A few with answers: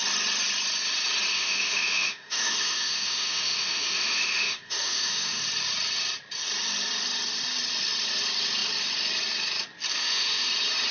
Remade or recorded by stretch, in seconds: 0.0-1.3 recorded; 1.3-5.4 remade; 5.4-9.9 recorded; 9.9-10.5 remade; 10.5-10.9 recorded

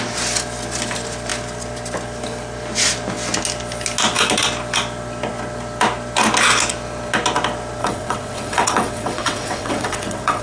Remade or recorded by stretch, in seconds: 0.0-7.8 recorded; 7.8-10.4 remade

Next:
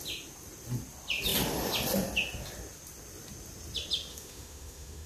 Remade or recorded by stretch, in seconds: 0.0-4.1 recorded; 4.1-5.1 remade